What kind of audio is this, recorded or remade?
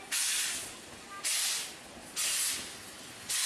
recorded